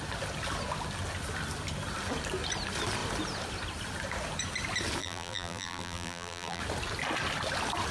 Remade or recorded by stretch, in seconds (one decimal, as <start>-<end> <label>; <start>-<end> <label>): 0.0-5.0 recorded; 5.0-6.6 remade; 6.6-7.9 recorded